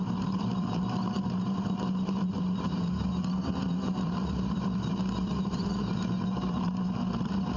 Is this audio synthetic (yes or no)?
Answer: yes